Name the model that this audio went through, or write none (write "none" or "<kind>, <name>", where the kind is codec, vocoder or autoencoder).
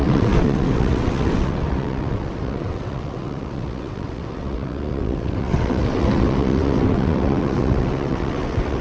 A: vocoder, WaveNeXt